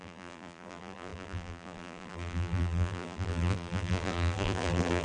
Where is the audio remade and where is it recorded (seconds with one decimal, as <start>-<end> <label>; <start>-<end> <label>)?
0.0-5.0 remade